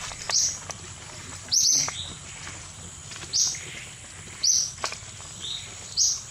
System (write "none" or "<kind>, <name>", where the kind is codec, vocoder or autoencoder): none